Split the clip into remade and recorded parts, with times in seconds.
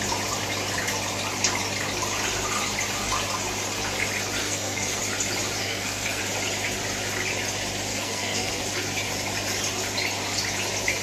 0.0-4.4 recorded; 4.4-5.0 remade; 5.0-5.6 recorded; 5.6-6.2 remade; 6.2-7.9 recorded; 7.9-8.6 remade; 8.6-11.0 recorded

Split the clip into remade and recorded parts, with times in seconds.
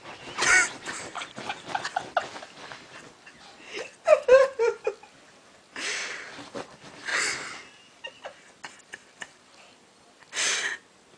0.0-11.2 recorded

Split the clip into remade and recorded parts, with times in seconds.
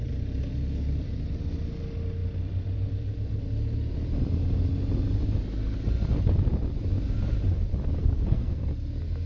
0.0-8.0 recorded; 8.0-8.7 remade; 8.7-9.3 recorded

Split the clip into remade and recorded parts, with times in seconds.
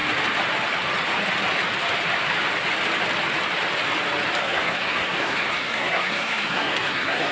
0.0-4.4 recorded; 4.4-7.3 remade